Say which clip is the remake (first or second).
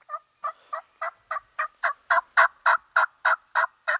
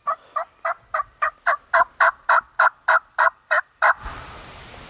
second